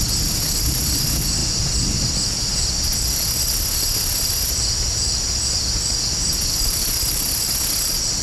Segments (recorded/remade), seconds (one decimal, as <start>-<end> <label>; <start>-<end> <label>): 0.0-8.2 recorded

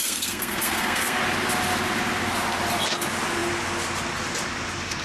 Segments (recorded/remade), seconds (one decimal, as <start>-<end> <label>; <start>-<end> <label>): 0.0-1.2 remade; 1.2-5.0 recorded

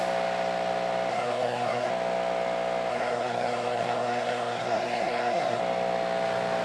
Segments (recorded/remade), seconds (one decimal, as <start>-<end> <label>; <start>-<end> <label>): 0.0-1.1 recorded; 1.1-1.9 remade; 1.9-2.9 recorded; 2.9-5.6 remade; 5.6-6.6 recorded

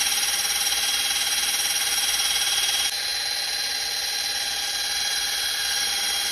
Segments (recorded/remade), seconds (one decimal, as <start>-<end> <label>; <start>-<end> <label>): 0.0-6.3 recorded

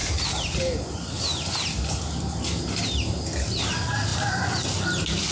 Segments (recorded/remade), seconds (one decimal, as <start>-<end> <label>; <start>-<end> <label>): 0.0-5.3 recorded

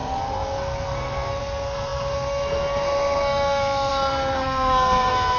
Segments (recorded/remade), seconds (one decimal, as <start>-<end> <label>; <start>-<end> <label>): 0.0-5.4 remade

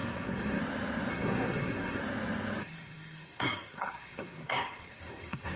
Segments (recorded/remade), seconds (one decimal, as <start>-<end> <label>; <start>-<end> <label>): 0.0-0.6 remade; 0.6-1.1 recorded; 1.1-2.0 remade; 2.0-2.6 recorded; 2.6-5.6 remade

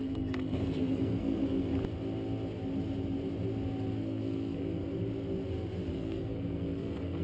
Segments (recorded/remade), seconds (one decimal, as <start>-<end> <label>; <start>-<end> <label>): 0.0-1.7 remade; 1.7-4.0 recorded; 4.0-4.8 remade; 4.8-5.9 recorded; 5.9-7.2 remade